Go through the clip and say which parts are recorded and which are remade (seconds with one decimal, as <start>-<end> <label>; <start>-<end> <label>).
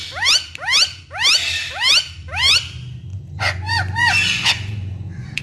0.0-3.1 recorded; 3.1-5.4 remade